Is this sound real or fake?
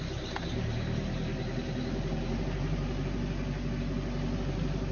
real